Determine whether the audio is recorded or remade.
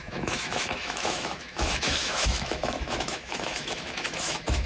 remade